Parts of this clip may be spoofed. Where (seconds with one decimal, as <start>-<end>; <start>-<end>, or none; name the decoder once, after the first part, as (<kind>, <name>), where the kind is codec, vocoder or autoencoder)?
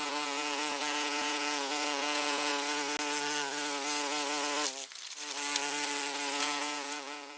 0.0-2.5 (vocoder, Vocos); 6.4-7.4